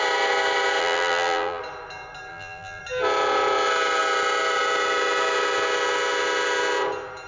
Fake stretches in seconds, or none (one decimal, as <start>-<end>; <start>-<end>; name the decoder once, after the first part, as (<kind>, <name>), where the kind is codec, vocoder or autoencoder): 0.8-1.6 (vocoder, BigVGAN v2); 2.3-2.8